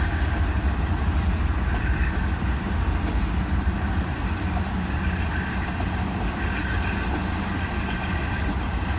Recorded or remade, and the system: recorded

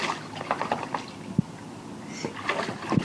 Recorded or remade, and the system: recorded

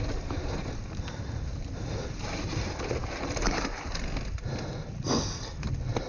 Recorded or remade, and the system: recorded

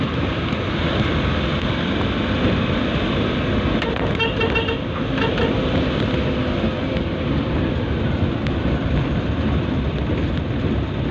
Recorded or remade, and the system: recorded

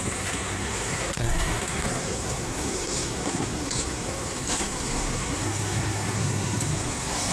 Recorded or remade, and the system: remade, codec, SNAC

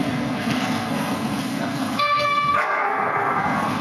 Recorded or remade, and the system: remade, codec, SNAC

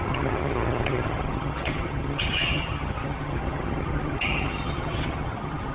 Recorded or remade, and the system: remade, vocoder, HiFi-GAN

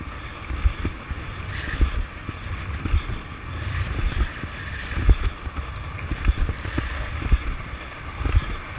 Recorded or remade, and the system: recorded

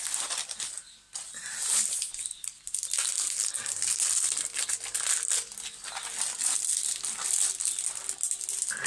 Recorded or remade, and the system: recorded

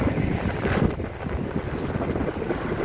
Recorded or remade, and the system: recorded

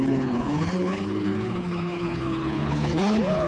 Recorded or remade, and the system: remade, codec, HILCodec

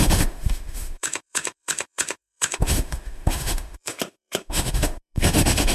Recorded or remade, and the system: remade, autoencoder, DAC-VAE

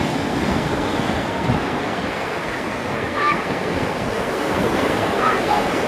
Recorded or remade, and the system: remade, codec, SNAC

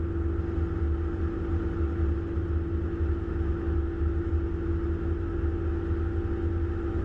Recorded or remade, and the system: recorded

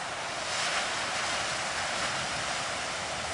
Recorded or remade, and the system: recorded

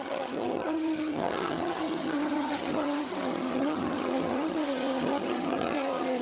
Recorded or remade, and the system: remade, vocoder, HiFi-GAN